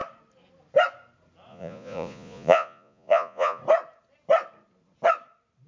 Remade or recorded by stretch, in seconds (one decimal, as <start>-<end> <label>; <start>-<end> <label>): 0.0-1.5 recorded; 1.5-3.6 remade; 3.6-5.7 recorded